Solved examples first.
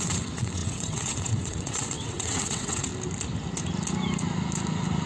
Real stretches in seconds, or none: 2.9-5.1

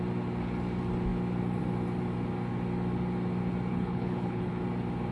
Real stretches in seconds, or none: 0.0-3.7; 4.6-5.1